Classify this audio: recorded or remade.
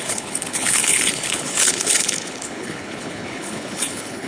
remade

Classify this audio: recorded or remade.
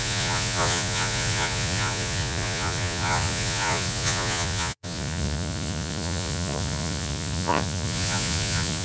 remade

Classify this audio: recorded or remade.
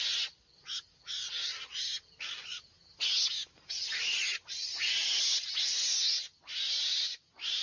recorded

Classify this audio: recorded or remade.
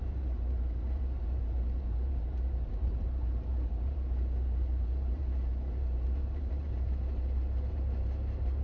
remade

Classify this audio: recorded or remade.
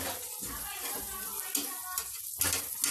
recorded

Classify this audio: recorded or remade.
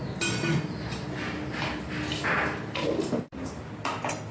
recorded